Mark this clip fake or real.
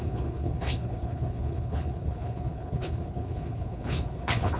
fake